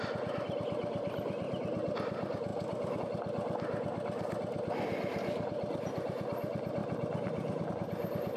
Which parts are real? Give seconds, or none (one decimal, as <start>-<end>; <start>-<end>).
0.0-6.8; 7.7-8.4